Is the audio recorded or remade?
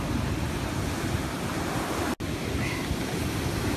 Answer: recorded